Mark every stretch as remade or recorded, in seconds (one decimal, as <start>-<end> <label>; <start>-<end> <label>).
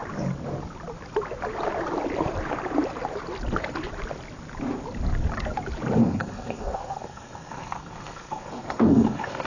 0.0-6.0 recorded; 6.0-9.5 remade